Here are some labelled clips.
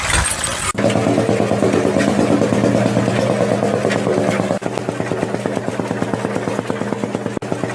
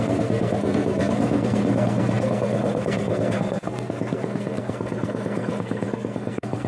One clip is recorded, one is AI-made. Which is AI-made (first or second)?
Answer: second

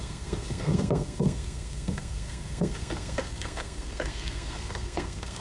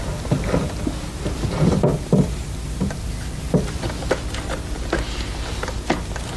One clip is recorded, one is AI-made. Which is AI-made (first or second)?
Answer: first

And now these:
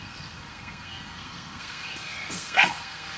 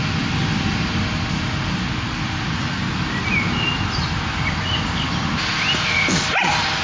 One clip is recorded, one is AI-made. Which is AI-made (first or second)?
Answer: first